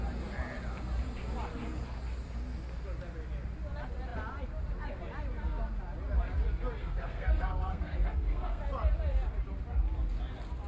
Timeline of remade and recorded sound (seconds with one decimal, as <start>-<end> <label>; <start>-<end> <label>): 0.0-6.8 recorded; 6.8-8.6 remade; 8.6-10.7 recorded